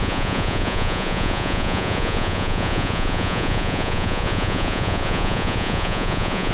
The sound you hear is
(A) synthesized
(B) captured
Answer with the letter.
A